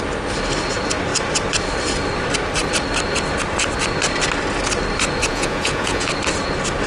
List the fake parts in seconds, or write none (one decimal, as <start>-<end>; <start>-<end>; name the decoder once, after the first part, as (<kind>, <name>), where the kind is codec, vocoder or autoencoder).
5.3-6.1 (vocoder, Vocos)